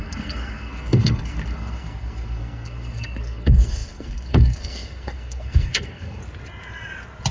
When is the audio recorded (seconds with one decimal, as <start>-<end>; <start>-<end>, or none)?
6.2-7.3